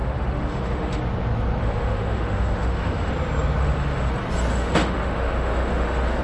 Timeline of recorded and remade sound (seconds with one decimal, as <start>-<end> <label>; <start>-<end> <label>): 0.0-1.0 remade; 1.0-1.6 recorded; 1.6-3.1 remade; 3.1-3.6 recorded; 3.6-4.1 remade; 4.1-4.5 recorded; 4.5-6.2 remade